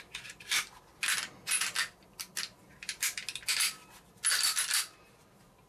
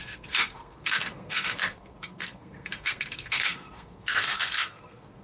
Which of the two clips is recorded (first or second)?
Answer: first